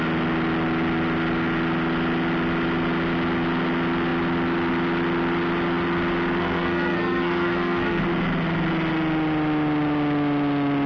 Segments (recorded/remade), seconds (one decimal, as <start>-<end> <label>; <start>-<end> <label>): 0.0-6.4 recorded; 6.4-8.0 remade; 8.0-10.9 recorded